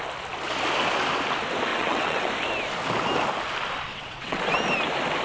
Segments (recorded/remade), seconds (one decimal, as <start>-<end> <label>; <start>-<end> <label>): 0.0-1.7 recorded; 1.7-2.3 remade; 2.3-3.9 recorded; 3.9-4.4 remade; 4.4-5.2 recorded